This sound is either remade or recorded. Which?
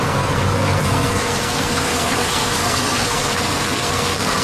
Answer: remade